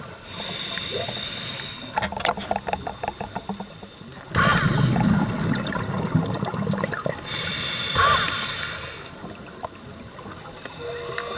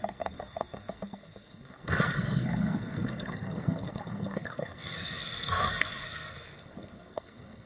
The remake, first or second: second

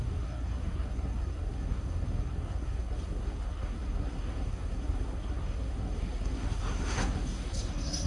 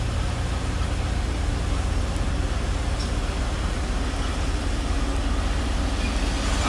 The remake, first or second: first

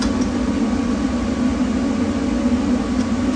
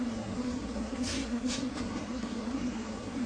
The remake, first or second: second